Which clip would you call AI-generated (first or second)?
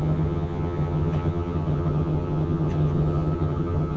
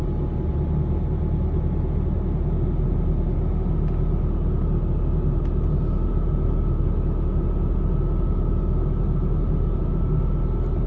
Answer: first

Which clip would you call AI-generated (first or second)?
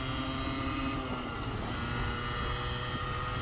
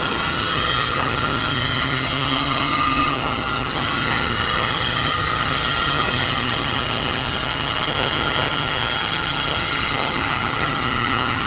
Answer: second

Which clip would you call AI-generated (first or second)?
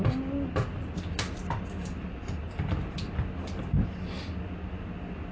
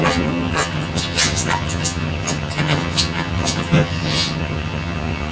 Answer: second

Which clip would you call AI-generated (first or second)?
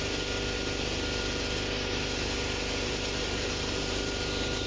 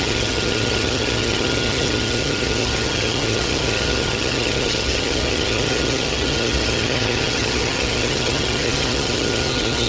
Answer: second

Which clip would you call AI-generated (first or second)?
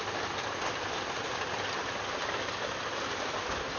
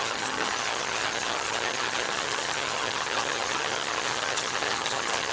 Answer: second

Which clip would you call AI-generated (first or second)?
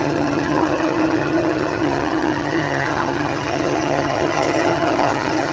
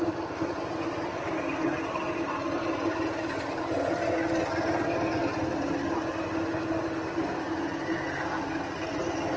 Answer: first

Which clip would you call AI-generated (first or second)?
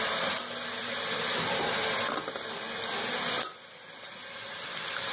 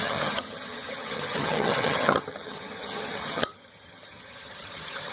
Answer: second